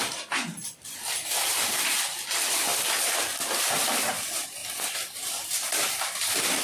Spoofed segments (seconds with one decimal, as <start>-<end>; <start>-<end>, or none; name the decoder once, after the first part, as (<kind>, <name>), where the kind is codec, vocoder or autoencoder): 0.0-2.7 (vocoder, BigVGAN v2); 3.6-4.6; 5.3-6.6